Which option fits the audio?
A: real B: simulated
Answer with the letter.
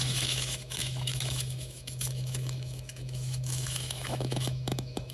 B